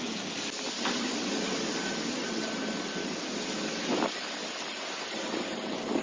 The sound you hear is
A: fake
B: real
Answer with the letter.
B